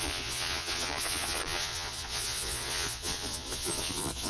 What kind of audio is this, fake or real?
fake